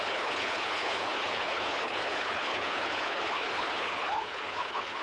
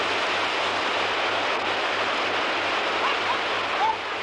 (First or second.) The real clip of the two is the second